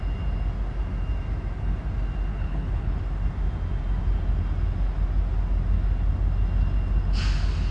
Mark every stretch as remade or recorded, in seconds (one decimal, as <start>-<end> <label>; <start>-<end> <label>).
0.0-2.3 recorded; 2.3-3.0 remade; 3.0-7.7 recorded